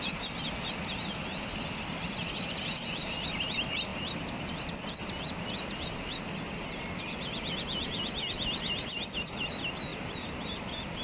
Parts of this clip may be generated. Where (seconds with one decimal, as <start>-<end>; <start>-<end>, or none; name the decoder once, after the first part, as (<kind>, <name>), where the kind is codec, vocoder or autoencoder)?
2.2-2.8 (vocoder, BigVGAN v2); 9.9-10.6